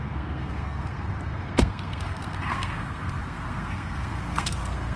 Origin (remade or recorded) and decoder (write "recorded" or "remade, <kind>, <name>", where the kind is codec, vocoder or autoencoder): remade, codec, SNAC